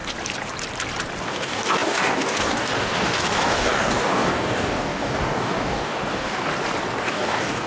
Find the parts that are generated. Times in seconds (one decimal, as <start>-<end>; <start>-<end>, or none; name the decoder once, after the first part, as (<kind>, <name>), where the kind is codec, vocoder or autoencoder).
1.2-6.5 (codec, DAC); 7.1-7.7